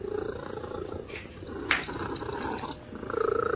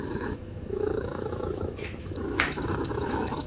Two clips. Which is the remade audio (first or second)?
second